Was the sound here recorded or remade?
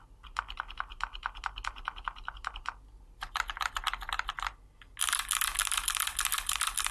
recorded